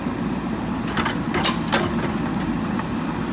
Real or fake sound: real